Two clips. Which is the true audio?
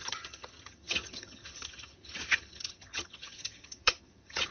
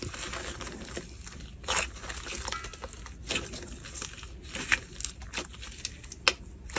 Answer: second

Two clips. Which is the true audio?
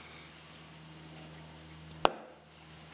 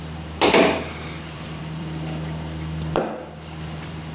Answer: first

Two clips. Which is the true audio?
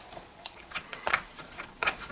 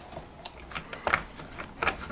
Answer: second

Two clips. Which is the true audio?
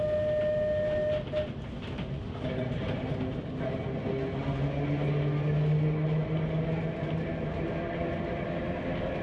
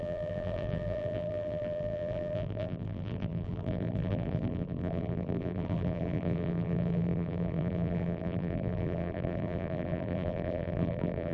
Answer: first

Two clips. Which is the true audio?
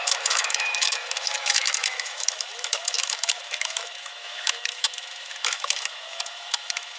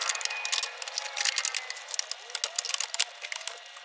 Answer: second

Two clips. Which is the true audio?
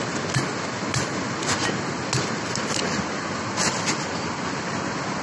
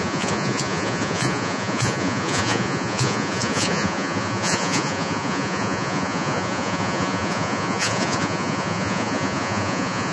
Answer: first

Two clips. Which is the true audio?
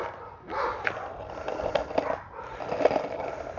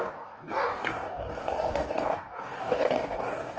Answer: first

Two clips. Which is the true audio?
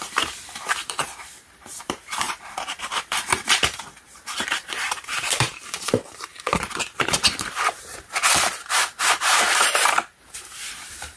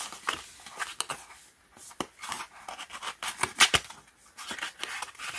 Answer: second